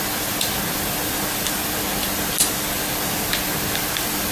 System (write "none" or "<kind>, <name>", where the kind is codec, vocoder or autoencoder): none